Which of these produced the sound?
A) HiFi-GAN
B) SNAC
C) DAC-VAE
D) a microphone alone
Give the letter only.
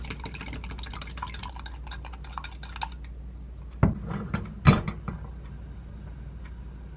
D